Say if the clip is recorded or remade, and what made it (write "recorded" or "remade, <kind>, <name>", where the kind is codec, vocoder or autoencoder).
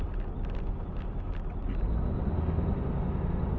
recorded